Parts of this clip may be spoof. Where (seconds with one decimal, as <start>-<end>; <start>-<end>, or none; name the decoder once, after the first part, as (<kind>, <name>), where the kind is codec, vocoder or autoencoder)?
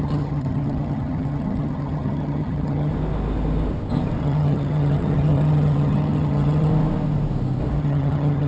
0.0-2.9 (vocoder, HiFi-GAN); 4.2-6.7; 7.8-8.5